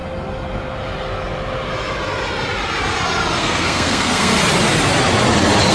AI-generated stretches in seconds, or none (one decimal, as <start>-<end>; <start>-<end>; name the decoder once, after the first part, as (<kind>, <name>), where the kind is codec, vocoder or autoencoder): 3.4-4.3 (codec, SNAC)